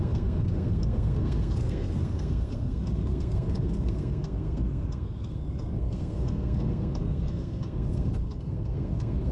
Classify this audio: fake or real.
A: fake